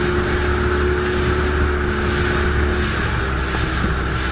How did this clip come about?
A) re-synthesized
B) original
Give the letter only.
B